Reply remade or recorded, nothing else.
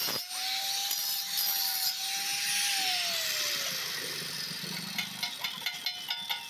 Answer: recorded